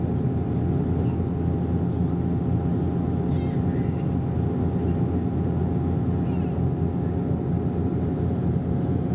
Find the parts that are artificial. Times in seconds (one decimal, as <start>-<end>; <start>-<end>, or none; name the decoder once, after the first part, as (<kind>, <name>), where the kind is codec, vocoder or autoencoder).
none